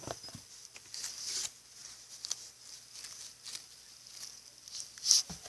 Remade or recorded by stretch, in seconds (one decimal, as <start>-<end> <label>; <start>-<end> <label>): 0.0-1.8 recorded; 1.8-2.6 remade; 2.6-5.5 recorded

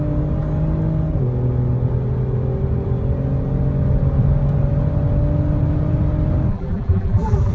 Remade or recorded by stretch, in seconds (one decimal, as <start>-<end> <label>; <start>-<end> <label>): 0.0-6.5 recorded; 6.5-7.5 remade

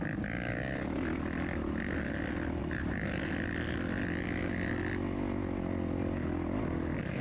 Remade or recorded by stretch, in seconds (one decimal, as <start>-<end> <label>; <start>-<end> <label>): 0.0-2.6 recorded; 2.6-3.3 remade; 3.3-7.2 recorded

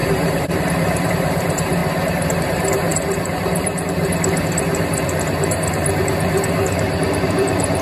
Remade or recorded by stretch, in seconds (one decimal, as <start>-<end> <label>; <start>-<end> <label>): 0.0-1.8 remade; 1.8-2.4 recorded; 2.4-7.8 remade

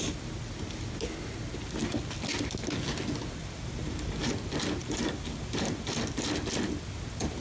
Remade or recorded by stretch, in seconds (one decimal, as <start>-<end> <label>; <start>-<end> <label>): 0.0-3.4 recorded; 3.4-4.3 remade; 4.3-4.8 recorded; 4.8-6.0 remade; 6.0-7.4 recorded

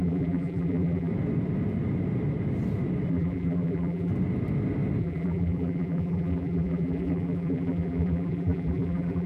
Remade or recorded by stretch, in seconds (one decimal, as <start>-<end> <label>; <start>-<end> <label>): 0.0-1.1 remade; 1.1-3.1 recorded; 3.1-4.1 remade; 4.1-5.0 recorded; 5.0-9.3 remade

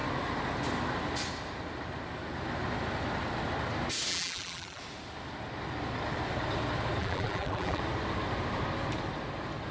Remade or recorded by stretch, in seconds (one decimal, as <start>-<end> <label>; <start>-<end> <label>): 0.0-4.1 recorded; 4.1-4.8 remade; 4.8-7.0 recorded; 7.0-7.8 remade; 7.8-9.7 recorded

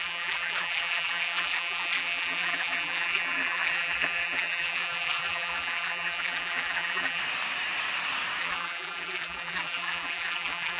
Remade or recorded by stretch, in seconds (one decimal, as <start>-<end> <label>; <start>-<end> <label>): 0.0-7.2 remade; 7.2-8.4 recorded; 8.4-10.8 remade